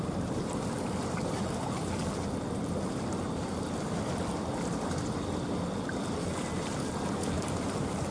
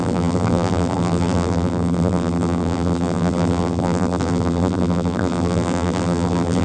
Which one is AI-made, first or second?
second